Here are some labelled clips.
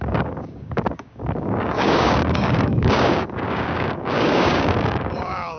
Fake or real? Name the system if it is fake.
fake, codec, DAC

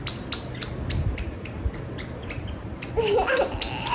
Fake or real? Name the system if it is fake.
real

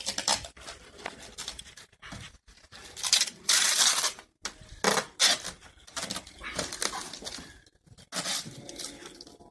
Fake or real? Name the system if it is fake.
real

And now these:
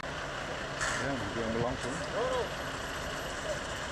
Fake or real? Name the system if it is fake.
real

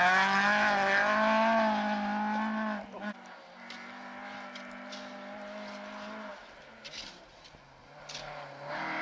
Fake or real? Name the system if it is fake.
real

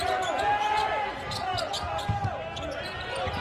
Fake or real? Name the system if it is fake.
real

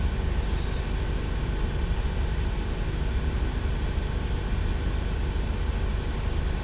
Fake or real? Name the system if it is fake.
real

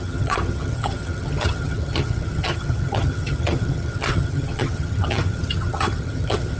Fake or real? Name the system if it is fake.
fake, vocoder, HiFi-GAN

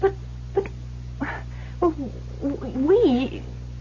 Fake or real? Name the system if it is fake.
real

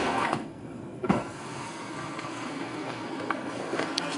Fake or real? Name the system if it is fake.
fake, codec, SNAC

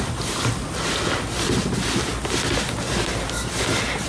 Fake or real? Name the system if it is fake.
real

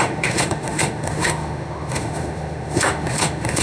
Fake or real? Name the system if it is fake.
fake, autoencoder, DAC-VAE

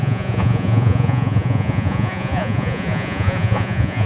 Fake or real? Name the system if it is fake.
fake, vocoder, Vocos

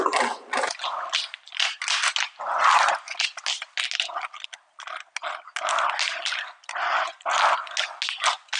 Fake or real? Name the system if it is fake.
real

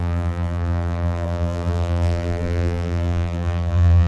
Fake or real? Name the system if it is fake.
fake, vocoder, BigVGAN v2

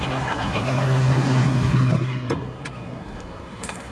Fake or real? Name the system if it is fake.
fake, codec, SNAC